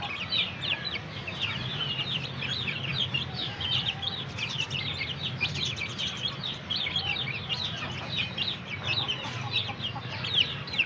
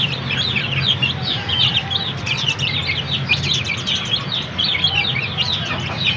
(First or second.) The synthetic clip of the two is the first